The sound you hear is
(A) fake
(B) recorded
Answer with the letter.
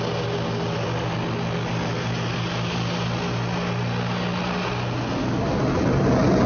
B